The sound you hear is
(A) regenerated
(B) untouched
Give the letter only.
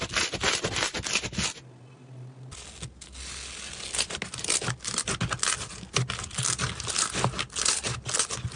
B